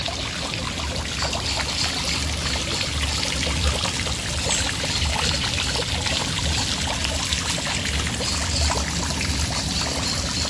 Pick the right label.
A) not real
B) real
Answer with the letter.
B